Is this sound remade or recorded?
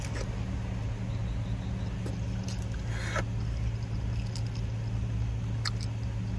recorded